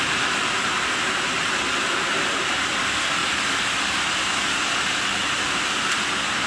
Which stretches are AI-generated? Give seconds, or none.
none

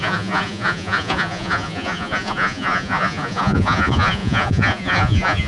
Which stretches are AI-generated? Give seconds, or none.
0.0-5.5 (vocoder, Vocos)

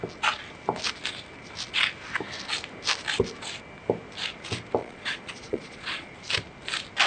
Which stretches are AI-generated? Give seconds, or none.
4.8-6.1 (vocoder, Vocos)

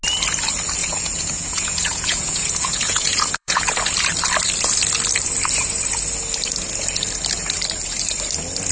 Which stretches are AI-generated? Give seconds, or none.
0.8-3.8 (vocoder, Vocos)

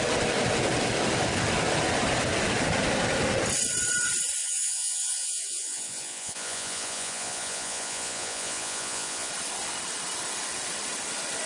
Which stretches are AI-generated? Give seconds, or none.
4.4-9.3 (vocoder, Vocos)

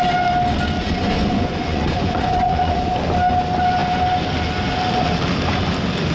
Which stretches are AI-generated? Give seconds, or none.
0.8-2.9 (vocoder, Vocos)

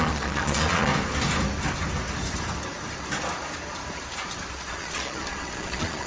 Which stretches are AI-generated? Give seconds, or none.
0.0-0.9 (vocoder, Vocos); 4.6-6.1